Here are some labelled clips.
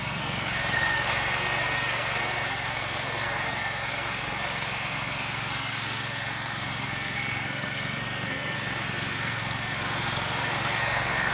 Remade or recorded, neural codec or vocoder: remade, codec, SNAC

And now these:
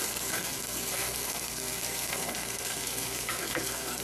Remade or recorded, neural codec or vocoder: remade, codec, SNAC